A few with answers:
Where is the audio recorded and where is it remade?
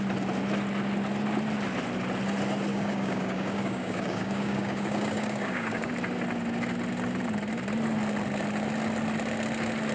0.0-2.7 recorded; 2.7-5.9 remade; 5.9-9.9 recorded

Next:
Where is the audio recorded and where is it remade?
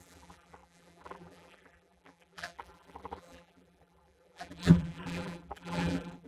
0.0-6.3 remade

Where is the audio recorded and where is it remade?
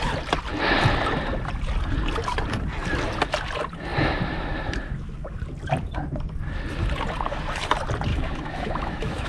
0.0-8.1 recorded; 8.1-9.3 remade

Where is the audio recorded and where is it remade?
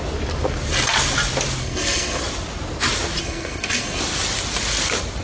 0.0-1.6 recorded; 1.6-2.2 remade; 2.2-3.2 recorded; 3.2-4.0 remade; 4.0-5.2 recorded